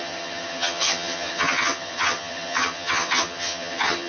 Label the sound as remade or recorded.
remade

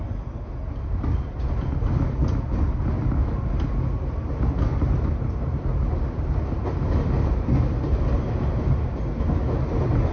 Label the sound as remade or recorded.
recorded